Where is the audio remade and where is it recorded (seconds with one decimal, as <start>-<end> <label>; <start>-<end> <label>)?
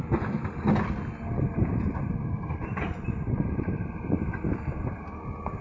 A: 0.0-1.6 recorded; 1.6-4.2 remade; 4.2-5.6 recorded